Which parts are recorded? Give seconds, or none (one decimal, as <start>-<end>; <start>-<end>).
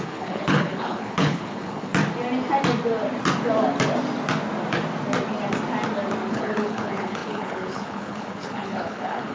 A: 1.9-6.3